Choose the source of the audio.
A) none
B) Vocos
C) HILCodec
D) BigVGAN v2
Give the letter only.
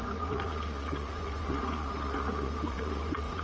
B